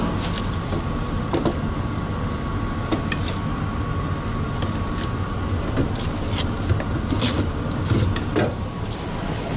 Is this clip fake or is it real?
real